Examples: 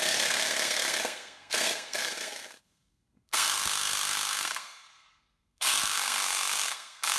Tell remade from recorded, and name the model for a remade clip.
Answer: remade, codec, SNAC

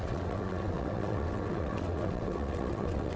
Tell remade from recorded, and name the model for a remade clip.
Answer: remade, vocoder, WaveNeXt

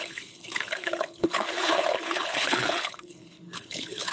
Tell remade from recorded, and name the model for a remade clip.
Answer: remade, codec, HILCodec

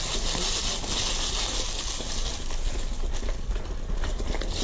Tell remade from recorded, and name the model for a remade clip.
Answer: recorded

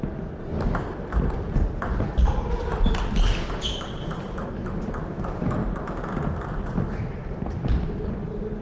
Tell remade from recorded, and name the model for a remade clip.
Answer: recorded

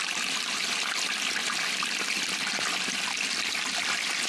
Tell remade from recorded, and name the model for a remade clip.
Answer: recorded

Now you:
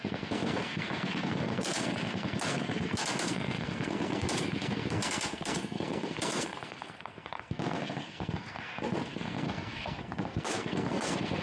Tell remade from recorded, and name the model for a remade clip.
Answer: remade, codec, SNAC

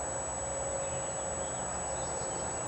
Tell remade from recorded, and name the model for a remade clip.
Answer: recorded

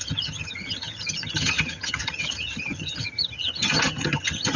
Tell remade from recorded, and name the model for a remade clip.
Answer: remade, vocoder, HiFi-GAN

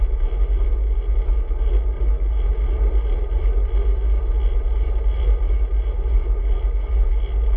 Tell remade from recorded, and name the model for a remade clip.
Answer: recorded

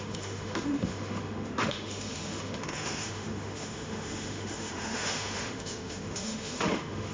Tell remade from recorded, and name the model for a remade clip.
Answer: remade, autoencoder, DAC-VAE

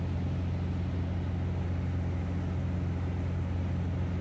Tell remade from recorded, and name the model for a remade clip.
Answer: recorded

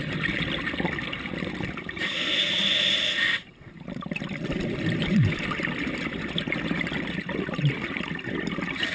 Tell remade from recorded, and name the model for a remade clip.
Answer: recorded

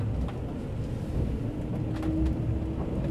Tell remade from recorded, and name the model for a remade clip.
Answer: recorded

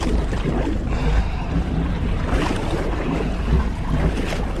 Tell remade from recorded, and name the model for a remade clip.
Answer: recorded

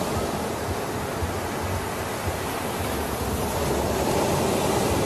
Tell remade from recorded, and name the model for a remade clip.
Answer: recorded